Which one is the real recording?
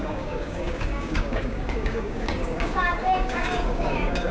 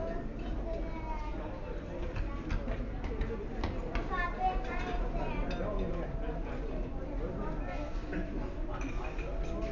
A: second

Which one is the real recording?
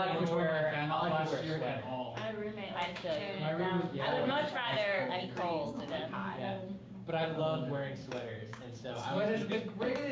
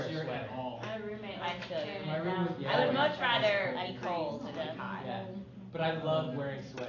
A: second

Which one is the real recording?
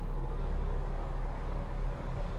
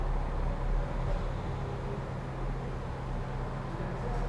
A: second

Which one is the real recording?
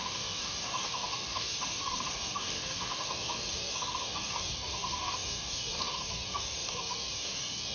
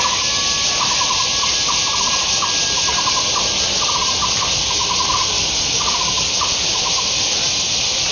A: second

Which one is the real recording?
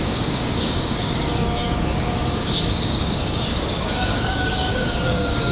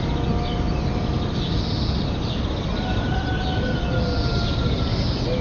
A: second